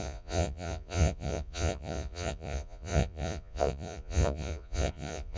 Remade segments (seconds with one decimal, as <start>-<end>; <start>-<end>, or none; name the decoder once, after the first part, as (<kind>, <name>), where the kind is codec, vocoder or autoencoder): 0.0-5.4 (vocoder, Vocos)